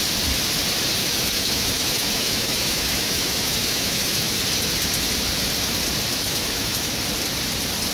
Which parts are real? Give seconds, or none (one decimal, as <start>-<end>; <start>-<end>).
0.0-1.0; 4.4-6.1; 6.9-7.9